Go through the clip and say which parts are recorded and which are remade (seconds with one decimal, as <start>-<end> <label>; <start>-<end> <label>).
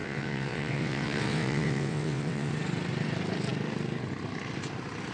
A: 0.0-2.5 remade; 2.5-5.1 recorded